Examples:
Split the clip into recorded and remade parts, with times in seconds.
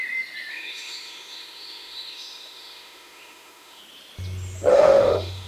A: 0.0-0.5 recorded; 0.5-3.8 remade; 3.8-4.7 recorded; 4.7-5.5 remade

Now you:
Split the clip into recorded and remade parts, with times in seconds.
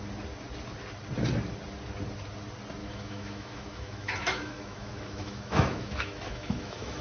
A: 0.0-2.8 recorded; 2.8-7.0 remade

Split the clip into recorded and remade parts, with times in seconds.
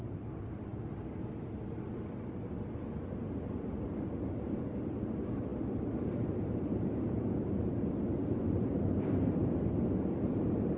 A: 0.0-10.8 recorded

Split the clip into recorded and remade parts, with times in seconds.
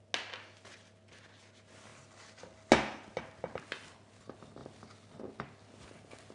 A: 0.0-6.3 recorded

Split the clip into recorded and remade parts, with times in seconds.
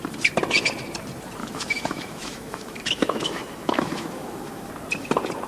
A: 0.0-1.4 recorded; 1.4-4.7 remade; 4.7-5.5 recorded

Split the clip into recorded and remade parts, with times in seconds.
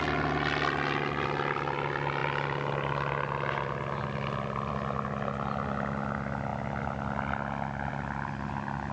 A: 0.0-8.9 recorded